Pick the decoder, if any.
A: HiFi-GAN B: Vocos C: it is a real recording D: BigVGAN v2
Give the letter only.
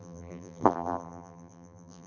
D